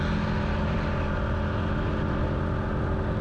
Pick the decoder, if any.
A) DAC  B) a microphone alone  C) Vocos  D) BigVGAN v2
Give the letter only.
B